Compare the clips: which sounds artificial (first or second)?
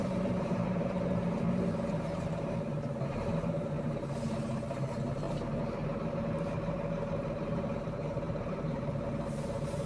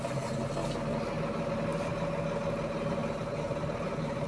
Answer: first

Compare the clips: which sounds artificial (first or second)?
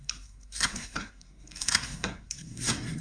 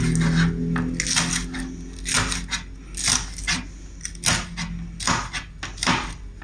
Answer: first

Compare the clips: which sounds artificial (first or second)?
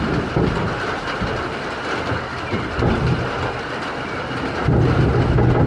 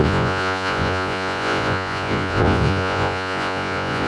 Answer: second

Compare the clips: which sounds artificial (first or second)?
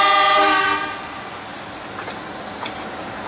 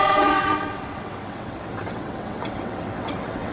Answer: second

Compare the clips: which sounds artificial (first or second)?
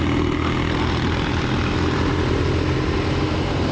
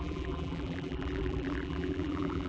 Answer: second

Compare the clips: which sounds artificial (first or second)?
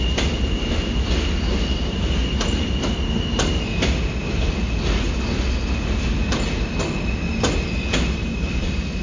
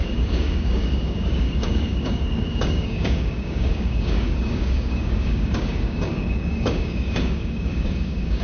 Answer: second